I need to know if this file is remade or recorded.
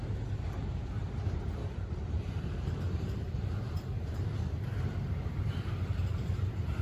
remade